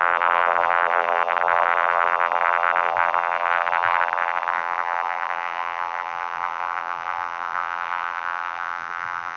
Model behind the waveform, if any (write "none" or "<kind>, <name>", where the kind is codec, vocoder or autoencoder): vocoder, BigVGAN v2